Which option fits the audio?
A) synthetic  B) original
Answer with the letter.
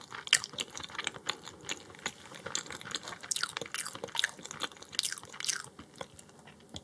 B